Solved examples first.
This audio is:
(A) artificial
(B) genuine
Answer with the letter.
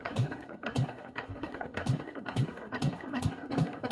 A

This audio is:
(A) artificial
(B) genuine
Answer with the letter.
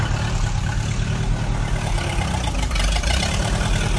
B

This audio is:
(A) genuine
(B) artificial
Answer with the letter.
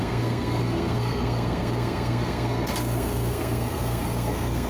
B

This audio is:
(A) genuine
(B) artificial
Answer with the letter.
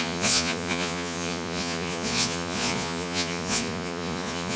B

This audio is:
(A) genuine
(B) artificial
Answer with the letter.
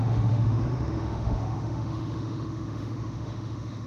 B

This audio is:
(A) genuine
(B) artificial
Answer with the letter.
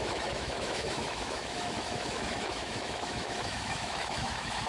B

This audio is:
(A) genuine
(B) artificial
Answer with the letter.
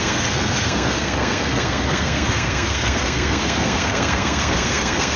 B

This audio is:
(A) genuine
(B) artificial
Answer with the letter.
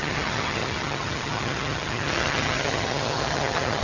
B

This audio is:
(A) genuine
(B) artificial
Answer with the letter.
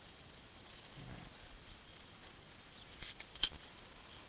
A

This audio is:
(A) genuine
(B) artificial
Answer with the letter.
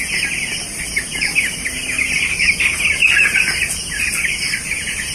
A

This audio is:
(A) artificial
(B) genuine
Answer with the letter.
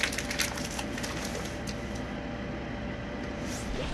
B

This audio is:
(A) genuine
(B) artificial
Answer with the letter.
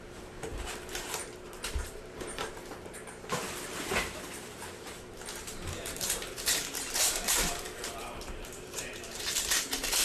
B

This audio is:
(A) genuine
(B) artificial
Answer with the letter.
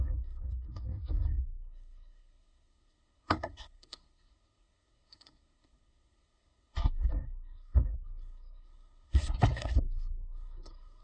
B